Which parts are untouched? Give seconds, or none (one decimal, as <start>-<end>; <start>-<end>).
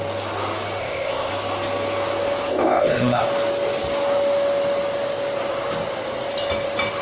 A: 0.0-0.8; 1.3-2.5; 3.2-7.0